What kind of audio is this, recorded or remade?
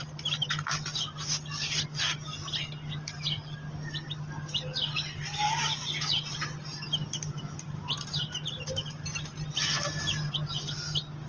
recorded